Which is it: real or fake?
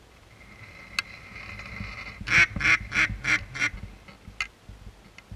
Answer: real